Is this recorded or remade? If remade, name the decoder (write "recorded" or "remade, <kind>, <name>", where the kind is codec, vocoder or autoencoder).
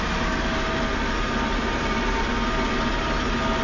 recorded